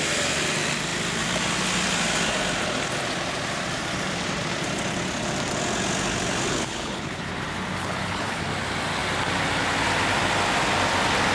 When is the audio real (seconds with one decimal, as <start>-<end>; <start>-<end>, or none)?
0.0-6.5; 7.3-7.8; 8.4-11.3